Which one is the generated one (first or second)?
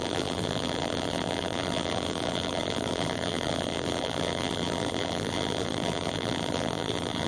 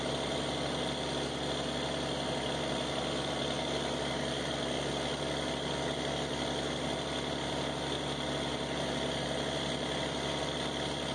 first